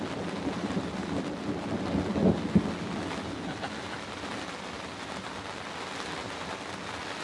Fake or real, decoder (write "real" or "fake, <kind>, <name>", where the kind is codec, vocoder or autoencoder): real